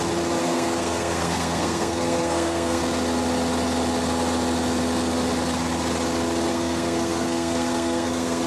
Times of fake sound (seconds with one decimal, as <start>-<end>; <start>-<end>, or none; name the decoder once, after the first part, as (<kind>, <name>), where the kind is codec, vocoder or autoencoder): 0.4-2.8 (codec, SNAC); 6.5-8.5